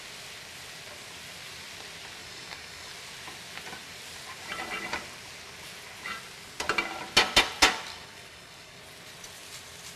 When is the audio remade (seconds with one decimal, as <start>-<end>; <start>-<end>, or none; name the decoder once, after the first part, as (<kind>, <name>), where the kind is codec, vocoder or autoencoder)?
2.2-2.9 (codec, DAC); 7.9-8.8